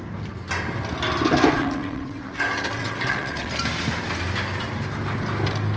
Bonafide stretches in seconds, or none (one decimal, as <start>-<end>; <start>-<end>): 0.0-1.6; 2.4-2.8; 3.5-5.8